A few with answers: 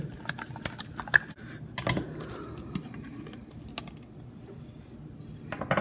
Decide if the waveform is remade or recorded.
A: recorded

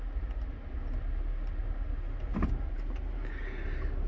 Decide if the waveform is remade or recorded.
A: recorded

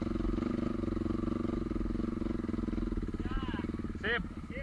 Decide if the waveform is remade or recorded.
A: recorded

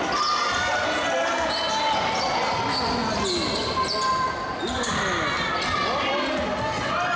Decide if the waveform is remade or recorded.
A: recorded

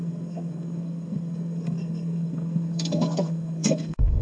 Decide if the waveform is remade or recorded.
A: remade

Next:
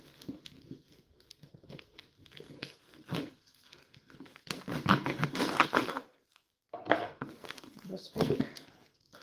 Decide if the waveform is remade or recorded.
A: remade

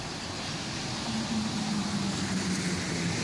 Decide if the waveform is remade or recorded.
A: recorded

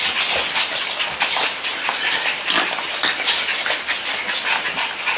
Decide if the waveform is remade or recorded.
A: recorded